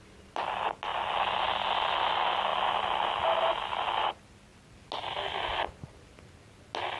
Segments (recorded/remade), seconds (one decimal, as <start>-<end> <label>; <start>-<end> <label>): 0.0-2.5 recorded; 2.5-4.1 remade; 4.1-7.0 recorded

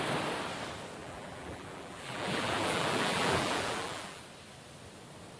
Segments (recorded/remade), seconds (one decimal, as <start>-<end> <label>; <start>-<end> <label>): 0.0-1.0 recorded; 1.0-4.2 remade; 4.2-5.4 recorded

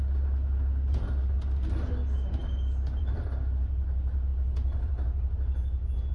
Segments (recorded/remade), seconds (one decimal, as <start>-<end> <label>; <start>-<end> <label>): 0.0-6.1 recorded

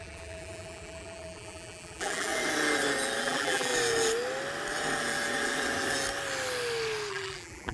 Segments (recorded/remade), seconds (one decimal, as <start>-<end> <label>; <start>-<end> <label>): 0.0-2.3 remade; 2.3-3.2 recorded; 3.2-3.7 remade; 3.7-7.1 recorded; 7.1-7.7 remade